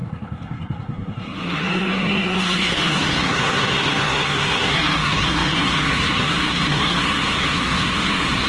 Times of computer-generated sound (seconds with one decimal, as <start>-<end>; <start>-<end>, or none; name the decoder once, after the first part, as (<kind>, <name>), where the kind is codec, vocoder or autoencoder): 0.0-8.5 (codec, SNAC)